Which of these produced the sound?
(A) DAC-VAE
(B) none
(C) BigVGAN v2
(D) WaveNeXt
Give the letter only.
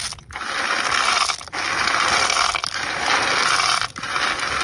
B